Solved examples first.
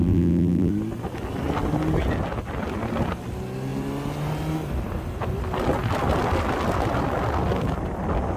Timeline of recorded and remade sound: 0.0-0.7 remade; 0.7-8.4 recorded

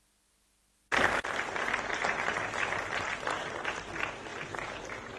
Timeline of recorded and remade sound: 0.0-5.2 recorded

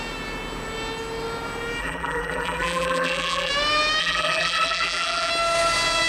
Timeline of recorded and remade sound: 0.0-1.8 recorded; 1.8-3.5 remade; 3.5-4.0 recorded; 4.0-5.3 remade; 5.3-6.1 recorded

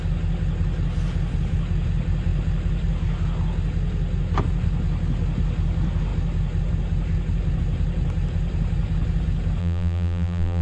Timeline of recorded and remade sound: 0.0-9.6 recorded; 9.6-10.6 remade

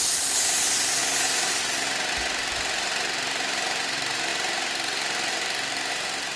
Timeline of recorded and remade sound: 0.0-1.0 remade; 1.0-2.1 recorded; 2.1-6.4 remade

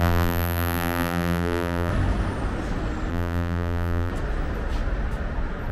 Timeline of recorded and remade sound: 0.0-1.9 remade; 1.9-3.1 recorded; 3.1-4.1 remade; 4.1-5.7 recorded

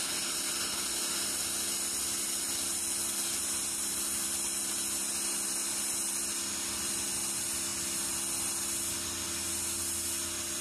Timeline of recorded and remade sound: 0.0-10.6 recorded

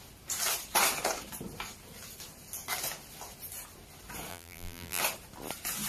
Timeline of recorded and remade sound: 0.0-4.3 recorded; 4.3-5.0 remade; 5.0-5.9 recorded